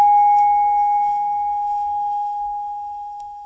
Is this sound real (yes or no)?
no